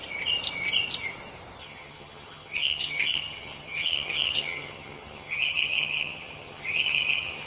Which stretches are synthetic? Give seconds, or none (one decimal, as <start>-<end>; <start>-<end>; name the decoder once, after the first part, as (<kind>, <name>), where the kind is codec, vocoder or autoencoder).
1.6-7.5 (vocoder, HiFi-GAN)

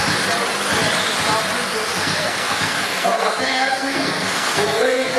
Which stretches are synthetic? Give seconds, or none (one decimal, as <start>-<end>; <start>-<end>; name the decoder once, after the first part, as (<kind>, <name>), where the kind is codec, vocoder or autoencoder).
1.9-5.2 (codec, SNAC)

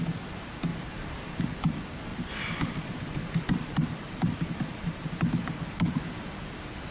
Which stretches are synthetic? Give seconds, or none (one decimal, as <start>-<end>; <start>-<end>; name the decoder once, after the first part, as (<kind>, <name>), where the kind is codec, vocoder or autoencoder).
0.7-1.4 (vocoder, BigVGAN v2); 2.1-5.2

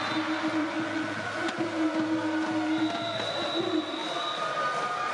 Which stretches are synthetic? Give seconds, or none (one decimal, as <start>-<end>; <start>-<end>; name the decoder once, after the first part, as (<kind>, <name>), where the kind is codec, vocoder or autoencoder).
0.6-1.5 (vocoder, Vocos)

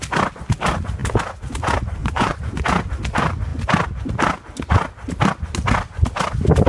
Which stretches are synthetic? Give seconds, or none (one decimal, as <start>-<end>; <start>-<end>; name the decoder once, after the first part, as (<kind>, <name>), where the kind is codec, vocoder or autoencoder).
2.0-2.6 (vocoder, Vocos)

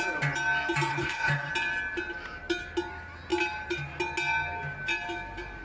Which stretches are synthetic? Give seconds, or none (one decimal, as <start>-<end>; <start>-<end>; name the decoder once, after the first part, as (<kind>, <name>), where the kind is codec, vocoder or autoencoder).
0.9-1.5 (codec, HILCodec)

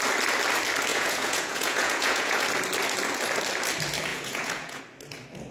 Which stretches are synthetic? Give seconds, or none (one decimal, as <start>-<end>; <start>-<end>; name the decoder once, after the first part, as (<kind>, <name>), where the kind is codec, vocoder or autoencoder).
0.9-2.4 (vocoder, Vocos); 4.1-4.8